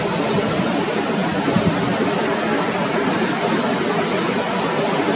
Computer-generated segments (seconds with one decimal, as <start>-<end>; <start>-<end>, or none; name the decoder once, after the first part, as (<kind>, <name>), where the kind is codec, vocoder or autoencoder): none